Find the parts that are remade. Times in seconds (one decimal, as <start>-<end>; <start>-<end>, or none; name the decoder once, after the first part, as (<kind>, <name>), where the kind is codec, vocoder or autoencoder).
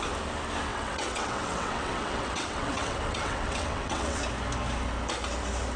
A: 0.7-4.2 (vocoder, WaveNeXt)